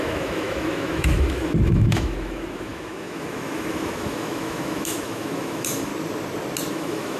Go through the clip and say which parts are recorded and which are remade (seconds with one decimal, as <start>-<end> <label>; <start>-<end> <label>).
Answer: 0.0-5.9 remade; 5.9-6.7 recorded; 6.7-7.2 remade

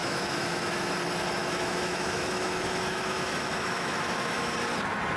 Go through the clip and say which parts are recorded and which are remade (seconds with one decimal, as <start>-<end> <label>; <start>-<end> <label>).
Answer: 0.0-0.9 remade; 0.9-1.4 recorded; 1.4-4.5 remade; 4.5-5.2 recorded

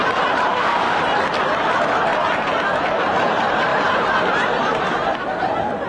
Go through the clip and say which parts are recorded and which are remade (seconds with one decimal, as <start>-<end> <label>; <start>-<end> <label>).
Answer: 0.0-0.5 recorded; 0.5-1.0 remade; 1.0-5.9 recorded